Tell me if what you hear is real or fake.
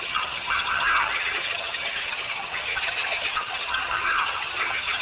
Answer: fake